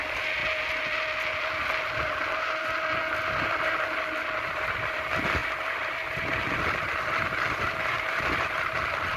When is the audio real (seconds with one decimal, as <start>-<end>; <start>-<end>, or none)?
0.4-2.4